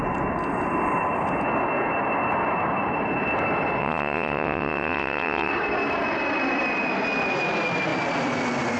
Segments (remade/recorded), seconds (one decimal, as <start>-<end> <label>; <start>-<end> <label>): 0.0-3.8 recorded; 3.8-5.5 remade; 5.5-8.8 recorded